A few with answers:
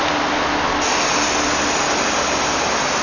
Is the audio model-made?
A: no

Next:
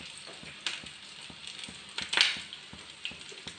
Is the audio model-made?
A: no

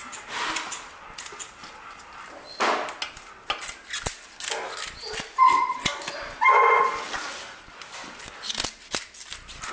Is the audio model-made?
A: no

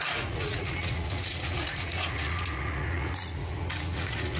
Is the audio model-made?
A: yes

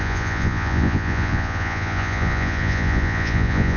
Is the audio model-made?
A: yes